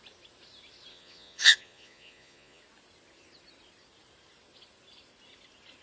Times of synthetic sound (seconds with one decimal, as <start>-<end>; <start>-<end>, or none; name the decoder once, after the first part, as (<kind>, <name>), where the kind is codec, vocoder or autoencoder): 0.9-2.6 (vocoder, Vocos)